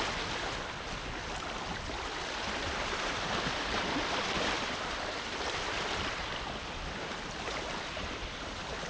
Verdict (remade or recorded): remade